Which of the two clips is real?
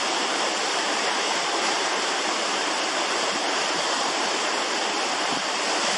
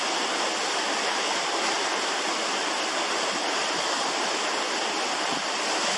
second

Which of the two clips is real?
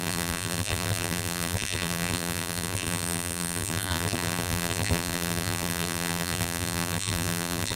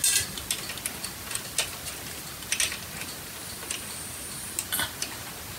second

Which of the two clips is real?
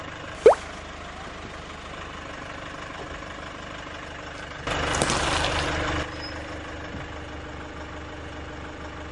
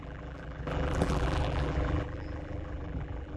first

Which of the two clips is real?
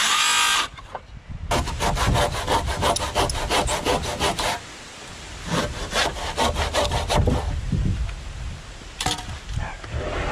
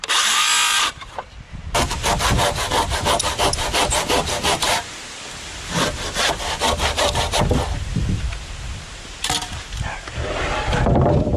first